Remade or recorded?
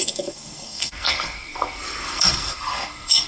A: remade